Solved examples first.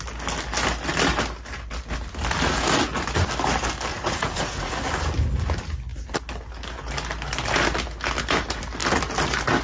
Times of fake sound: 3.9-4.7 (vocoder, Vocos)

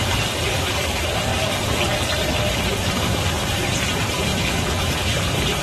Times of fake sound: 0.0-1.3 (vocoder, BigVGAN v2); 2.8-4.3; 5.0-5.6

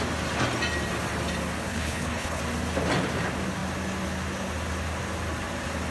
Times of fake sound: 1.7-2.4 (codec, HILCodec)

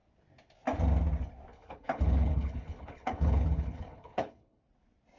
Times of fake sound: 1.5-4.6 (codec, HILCodec)

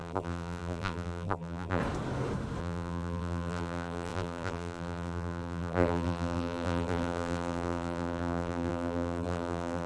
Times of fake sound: 0.0-1.8 (vocoder, BigVGAN v2); 2.6-9.9

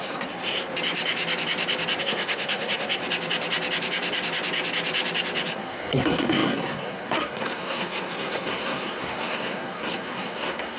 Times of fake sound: 0.0-0.7 (codec, SNAC); 2.0-3.0; 5.5-10.8